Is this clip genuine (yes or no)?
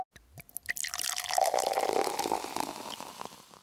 yes